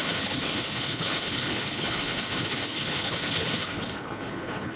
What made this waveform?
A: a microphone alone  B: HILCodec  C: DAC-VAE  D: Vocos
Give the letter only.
B